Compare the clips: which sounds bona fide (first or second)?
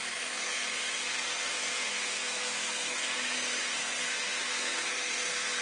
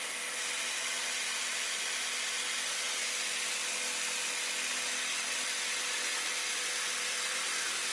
second